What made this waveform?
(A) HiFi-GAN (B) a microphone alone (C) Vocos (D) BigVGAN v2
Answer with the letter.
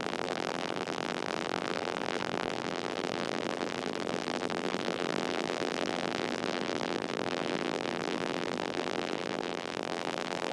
D